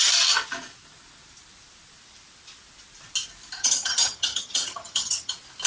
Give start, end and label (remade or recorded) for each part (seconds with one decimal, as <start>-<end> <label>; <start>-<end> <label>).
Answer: 0.0-3.6 recorded; 3.6-5.3 remade; 5.3-5.7 recorded